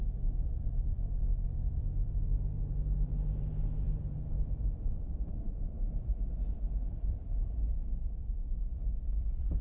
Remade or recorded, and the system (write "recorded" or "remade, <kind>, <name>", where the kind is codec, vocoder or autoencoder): remade, vocoder, BigVGAN v2